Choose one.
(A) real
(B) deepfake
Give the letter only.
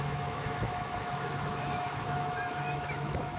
B